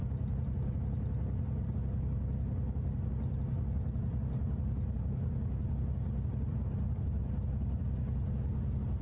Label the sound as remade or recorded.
recorded